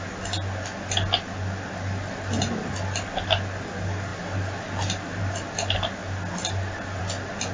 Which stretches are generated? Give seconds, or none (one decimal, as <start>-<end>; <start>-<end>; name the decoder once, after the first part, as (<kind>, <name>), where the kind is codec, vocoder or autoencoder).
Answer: none